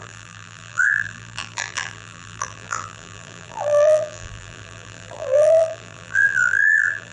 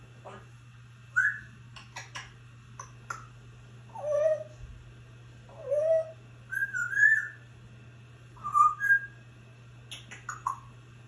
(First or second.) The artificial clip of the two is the first